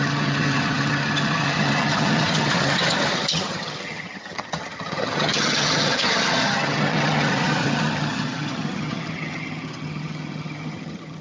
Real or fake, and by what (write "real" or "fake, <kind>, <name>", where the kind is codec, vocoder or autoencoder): fake, vocoder, HiFi-GAN